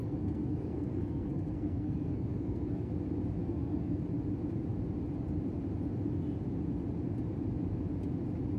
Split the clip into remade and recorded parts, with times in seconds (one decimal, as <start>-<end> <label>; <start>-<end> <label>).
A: 0.0-2.9 remade; 2.9-3.4 recorded; 3.4-4.0 remade; 4.0-8.6 recorded